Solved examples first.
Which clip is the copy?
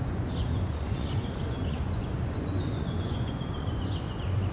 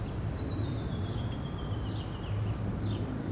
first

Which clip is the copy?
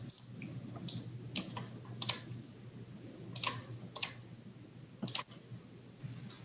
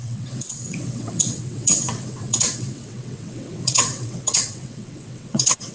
second